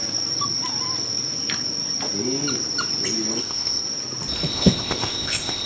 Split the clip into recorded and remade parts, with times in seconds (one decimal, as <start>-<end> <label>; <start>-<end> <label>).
0.0-3.4 recorded; 3.4-3.8 remade; 3.8-4.5 recorded; 4.5-5.7 remade